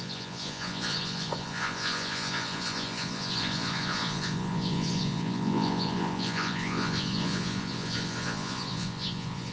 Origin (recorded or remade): remade